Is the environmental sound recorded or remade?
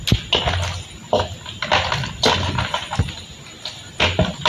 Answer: recorded